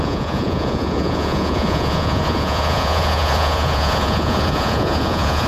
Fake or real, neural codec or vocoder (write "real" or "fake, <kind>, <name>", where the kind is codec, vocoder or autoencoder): fake, vocoder, Vocos